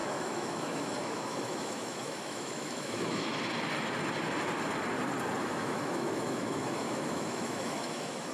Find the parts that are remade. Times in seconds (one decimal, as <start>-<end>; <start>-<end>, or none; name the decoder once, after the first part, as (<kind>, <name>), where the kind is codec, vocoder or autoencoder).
0.0-3.3 (autoencoder, DAC-VAE); 5.4-8.3